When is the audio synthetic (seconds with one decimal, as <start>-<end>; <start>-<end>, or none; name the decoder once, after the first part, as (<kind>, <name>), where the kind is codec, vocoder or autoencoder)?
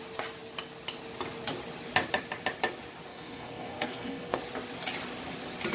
3.1-4.4 (codec, SNAC)